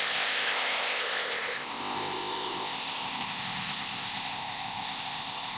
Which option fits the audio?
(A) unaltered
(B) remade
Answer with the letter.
B